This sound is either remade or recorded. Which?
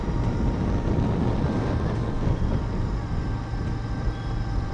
recorded